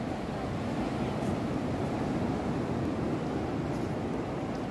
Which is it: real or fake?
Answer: real